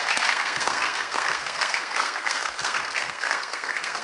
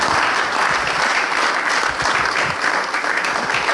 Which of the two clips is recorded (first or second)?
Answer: second